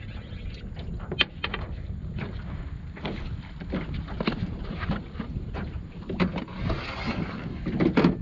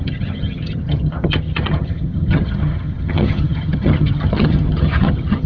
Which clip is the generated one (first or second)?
second